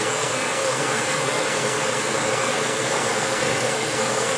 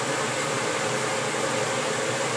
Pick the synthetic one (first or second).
first